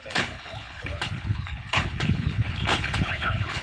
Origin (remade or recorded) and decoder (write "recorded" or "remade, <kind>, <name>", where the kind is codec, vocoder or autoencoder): remade, codec, HILCodec